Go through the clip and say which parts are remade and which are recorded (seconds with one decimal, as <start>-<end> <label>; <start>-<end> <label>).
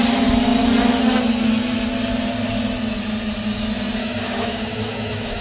0.0-4.0 recorded; 4.0-5.4 remade